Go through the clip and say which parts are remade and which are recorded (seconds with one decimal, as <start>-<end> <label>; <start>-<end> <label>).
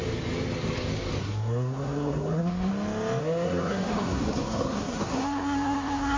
0.0-1.2 recorded; 1.2-2.7 remade; 2.7-3.2 recorded; 3.2-6.2 remade